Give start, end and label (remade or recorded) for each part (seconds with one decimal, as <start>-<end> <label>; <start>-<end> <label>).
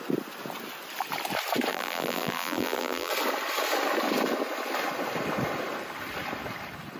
0.0-1.7 recorded; 1.7-3.1 remade; 3.1-7.0 recorded